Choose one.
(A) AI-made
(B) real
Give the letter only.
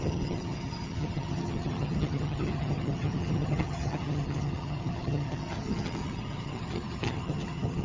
A